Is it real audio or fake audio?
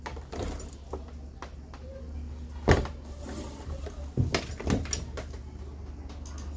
real